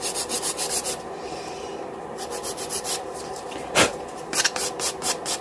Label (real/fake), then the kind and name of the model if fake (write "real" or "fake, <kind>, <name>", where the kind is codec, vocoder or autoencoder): fake, vocoder, BigVGAN v2